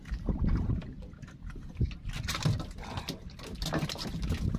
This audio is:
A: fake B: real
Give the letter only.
B